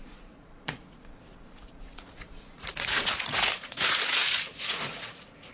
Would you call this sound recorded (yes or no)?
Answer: no